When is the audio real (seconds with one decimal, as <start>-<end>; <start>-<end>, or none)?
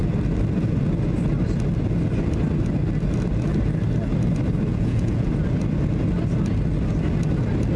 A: 0.0-4.7; 5.3-7.8